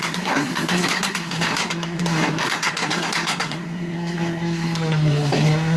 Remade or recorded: remade